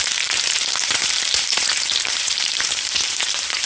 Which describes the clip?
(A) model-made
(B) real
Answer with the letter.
A